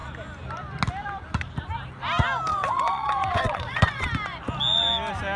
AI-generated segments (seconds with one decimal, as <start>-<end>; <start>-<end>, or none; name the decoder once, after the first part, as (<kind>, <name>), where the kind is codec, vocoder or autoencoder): 2.5-4.1 (vocoder, WaveNeXt)